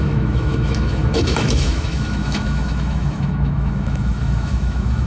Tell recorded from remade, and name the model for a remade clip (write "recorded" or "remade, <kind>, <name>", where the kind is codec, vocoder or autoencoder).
remade, autoencoder, DAC-VAE